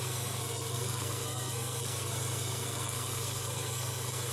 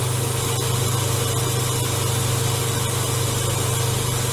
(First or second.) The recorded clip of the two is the second